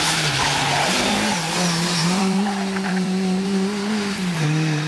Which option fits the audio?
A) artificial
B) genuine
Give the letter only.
A